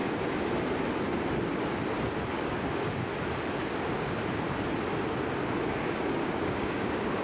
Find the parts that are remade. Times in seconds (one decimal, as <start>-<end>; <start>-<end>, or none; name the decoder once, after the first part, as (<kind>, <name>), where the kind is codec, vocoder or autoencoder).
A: 2.3-3.1 (codec, DAC); 5.6-7.2